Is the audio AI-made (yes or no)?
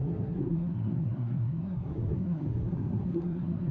yes